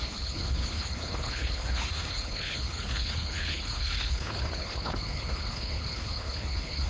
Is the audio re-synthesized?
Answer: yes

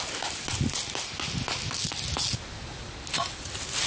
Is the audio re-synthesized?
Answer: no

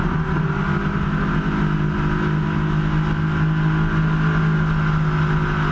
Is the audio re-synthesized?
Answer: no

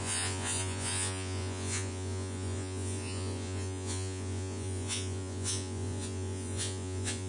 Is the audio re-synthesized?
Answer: yes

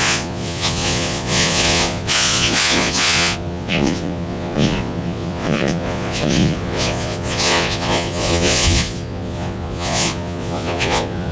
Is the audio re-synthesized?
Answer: yes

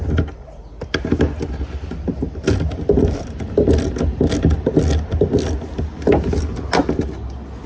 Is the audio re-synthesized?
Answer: no